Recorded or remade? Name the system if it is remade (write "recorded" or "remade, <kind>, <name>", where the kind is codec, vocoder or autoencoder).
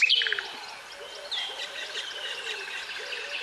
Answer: recorded